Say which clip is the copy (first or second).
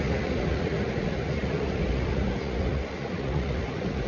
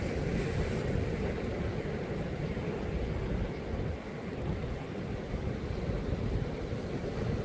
first